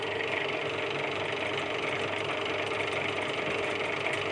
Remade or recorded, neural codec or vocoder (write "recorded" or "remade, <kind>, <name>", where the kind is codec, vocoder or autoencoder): remade, vocoder, BigVGAN v2